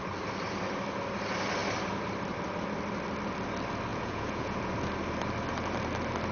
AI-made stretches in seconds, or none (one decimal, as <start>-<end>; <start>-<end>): 3.9-4.7